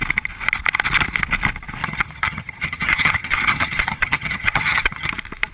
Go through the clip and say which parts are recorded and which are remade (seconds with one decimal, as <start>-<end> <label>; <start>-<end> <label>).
0.0-1.8 recorded; 1.8-5.1 remade; 5.1-5.5 recorded